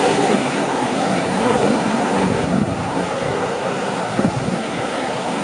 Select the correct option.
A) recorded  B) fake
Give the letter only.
B